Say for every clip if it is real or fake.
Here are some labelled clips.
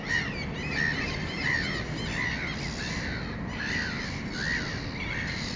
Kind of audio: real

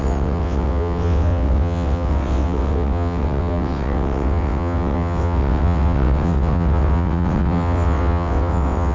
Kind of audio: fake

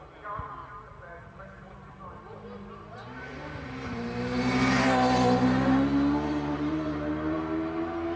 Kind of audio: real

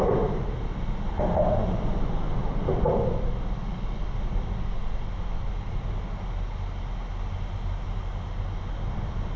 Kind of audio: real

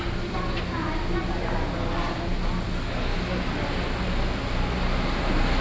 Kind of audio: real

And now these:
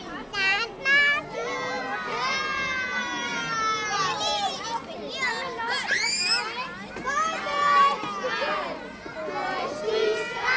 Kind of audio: real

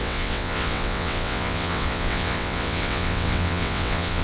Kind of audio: fake